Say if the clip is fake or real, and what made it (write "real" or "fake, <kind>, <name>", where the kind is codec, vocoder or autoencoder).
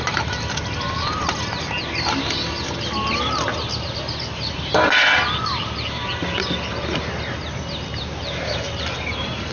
real